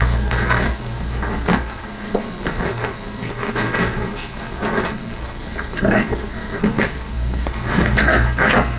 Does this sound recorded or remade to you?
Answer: remade